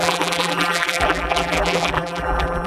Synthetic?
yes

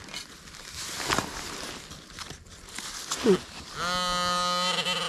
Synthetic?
no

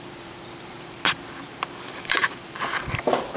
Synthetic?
yes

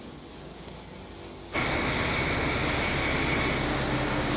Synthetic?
no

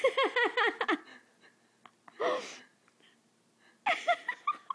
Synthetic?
no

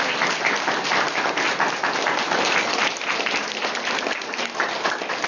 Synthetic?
no